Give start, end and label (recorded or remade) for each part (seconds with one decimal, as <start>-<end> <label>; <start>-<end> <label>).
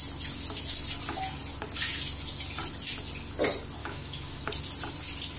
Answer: 0.0-3.8 recorded; 3.8-4.4 remade; 4.4-5.4 recorded